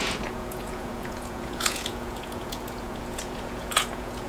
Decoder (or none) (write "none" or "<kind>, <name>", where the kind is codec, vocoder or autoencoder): vocoder, Vocos